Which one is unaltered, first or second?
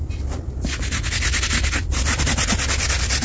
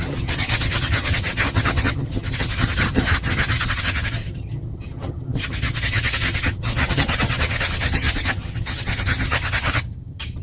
first